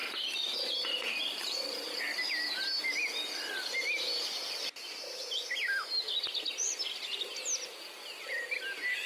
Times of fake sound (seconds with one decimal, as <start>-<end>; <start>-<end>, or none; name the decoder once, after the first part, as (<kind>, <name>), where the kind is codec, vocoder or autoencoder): 0.0-2.0 (vocoder, BigVGAN v2)